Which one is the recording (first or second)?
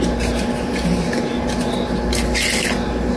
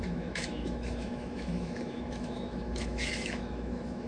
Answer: first